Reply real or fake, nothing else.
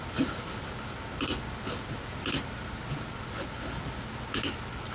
real